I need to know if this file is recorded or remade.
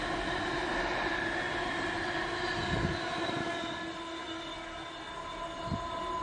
recorded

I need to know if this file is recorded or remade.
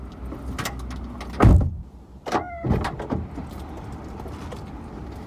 recorded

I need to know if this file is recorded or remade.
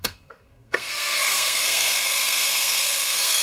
remade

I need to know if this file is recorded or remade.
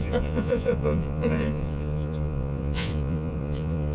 remade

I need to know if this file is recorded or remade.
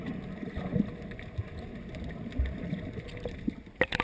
recorded